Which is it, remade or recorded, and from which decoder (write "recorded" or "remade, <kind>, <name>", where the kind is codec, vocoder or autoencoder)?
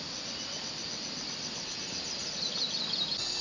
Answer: recorded